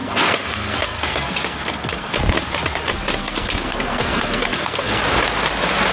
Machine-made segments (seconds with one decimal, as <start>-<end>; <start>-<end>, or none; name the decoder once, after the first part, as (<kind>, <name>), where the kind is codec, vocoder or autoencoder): 0.0-2.2 (codec, SNAC); 3.2-5.0